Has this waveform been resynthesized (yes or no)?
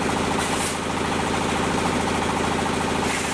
no